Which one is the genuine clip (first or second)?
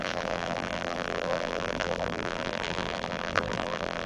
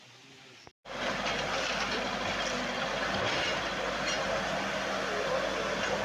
second